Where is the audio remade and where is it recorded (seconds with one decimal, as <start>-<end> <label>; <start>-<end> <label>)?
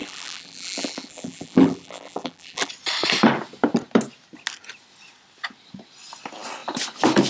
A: 0.0-2.7 remade; 2.7-7.3 recorded